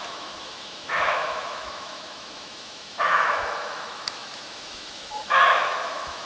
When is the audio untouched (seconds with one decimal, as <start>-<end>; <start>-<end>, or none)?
none